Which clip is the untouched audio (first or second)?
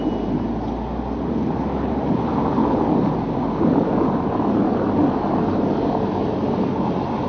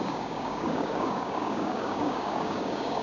first